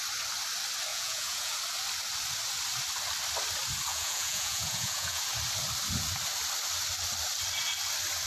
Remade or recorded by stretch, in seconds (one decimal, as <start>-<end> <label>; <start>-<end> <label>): 0.0-0.9 recorded; 0.9-1.5 remade; 1.5-3.9 recorded; 3.9-5.2 remade; 5.2-8.3 recorded